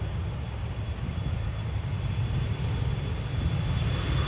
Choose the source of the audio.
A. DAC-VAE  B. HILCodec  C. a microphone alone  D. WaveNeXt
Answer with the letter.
C